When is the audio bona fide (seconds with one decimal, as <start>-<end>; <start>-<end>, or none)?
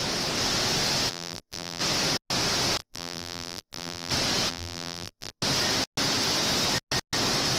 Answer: 0.0-1.1; 1.8-2.8; 4.1-4.5; 5.4-7.6